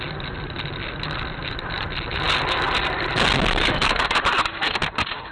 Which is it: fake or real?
real